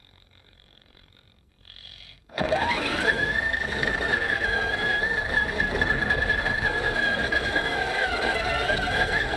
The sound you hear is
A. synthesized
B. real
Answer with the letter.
A